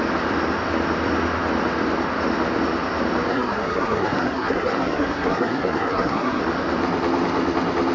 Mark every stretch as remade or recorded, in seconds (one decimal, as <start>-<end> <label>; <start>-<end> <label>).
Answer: 0.0-3.3 recorded; 3.3-6.4 remade; 6.4-7.9 recorded

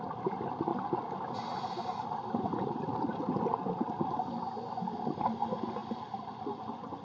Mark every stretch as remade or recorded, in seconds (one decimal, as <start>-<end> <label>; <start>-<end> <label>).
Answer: 0.0-5.8 recorded; 5.8-6.6 remade; 6.6-7.0 recorded